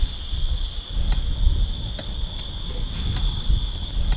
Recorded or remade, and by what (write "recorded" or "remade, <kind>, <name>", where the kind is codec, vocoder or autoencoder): recorded